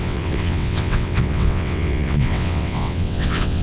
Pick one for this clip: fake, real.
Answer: fake